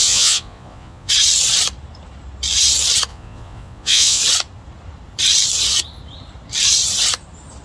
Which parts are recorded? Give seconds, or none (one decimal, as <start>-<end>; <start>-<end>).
1.1-3.1; 4.2-7.6